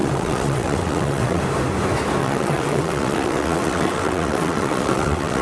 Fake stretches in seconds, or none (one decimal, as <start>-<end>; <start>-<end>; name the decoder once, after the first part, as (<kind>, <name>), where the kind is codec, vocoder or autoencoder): 0.0-1.4 (vocoder, WaveNeXt); 2.2-5.4